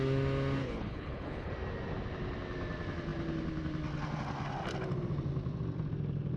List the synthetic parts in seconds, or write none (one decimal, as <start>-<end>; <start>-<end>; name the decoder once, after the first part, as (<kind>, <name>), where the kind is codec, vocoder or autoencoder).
0.6-1.5 (codec, HILCodec)